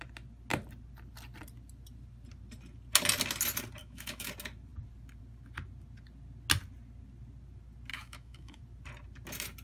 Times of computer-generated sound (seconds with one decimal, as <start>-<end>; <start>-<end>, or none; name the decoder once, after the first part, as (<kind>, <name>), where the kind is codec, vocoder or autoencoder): 3.8-4.3 (autoencoder, DAC-VAE); 7.9-8.6